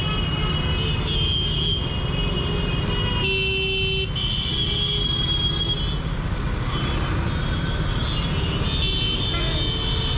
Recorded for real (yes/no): yes